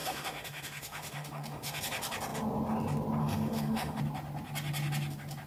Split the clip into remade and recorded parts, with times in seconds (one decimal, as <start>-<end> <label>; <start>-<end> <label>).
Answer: 0.0-1.8 remade; 1.8-3.2 recorded; 3.2-4.0 remade; 4.0-5.5 recorded